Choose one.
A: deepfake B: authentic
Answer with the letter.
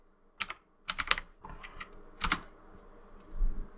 B